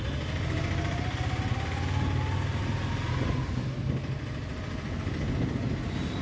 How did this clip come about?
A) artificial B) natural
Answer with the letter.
B